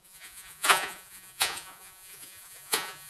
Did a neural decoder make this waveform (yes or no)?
yes